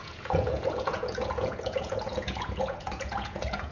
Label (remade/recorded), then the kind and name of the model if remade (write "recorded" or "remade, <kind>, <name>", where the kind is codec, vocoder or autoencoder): remade, vocoder, Vocos